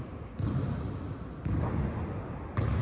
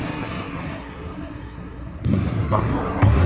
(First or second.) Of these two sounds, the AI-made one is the second